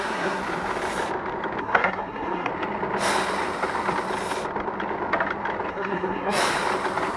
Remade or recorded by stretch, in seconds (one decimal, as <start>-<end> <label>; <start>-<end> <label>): 0.0-0.4 remade; 0.4-1.6 recorded; 1.6-2.5 remade; 2.5-5.7 recorded; 5.7-6.4 remade; 6.4-7.2 recorded